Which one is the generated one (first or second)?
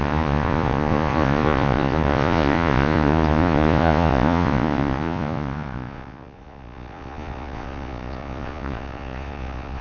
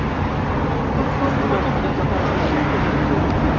first